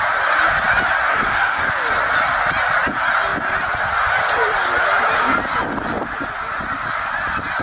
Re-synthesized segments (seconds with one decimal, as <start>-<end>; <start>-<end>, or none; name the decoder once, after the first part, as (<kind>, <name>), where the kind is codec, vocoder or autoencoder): 1.1-1.7 (codec, SNAC)